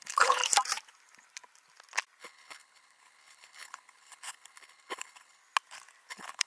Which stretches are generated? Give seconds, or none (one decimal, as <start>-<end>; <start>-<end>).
0.0-0.4; 2.2-5.4; 6.1-6.5